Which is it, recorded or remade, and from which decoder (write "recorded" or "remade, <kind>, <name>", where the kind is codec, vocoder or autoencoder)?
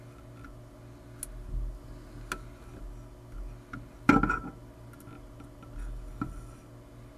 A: recorded